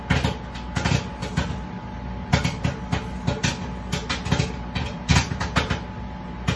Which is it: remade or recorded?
recorded